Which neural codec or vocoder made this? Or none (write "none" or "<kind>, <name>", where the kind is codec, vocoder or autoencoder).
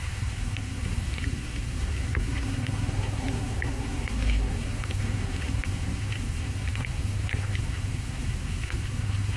codec, SNAC